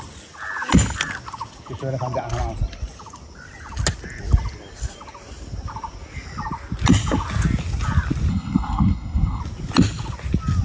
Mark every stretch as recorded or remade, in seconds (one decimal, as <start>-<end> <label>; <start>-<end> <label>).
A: 0.0-8.3 recorded; 8.3-9.4 remade; 9.4-10.6 recorded